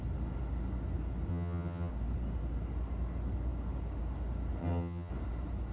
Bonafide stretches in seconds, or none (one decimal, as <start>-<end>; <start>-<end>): 0.0-1.3; 1.9-4.6; 5.1-5.7